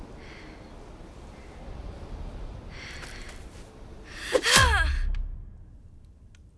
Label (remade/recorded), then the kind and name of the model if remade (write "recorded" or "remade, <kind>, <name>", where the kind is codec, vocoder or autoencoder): recorded